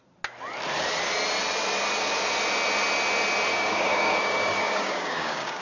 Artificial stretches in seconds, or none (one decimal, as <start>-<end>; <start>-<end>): 3.5-5.6